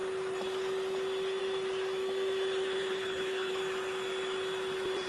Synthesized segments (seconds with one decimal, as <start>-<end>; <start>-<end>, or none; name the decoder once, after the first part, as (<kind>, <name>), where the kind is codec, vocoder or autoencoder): 2.8-3.5 (codec, HILCodec)

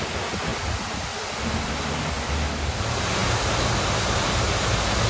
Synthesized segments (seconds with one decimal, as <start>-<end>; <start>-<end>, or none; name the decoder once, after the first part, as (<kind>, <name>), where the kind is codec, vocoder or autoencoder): none

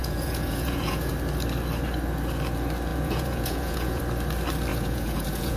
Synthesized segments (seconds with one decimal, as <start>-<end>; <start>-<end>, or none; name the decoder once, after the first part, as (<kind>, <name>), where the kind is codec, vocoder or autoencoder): 0.0-1.1 (vocoder, Vocos); 2.9-4.0; 4.7-5.6